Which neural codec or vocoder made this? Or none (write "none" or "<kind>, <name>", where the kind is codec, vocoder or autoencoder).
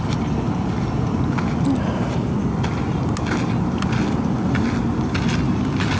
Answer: none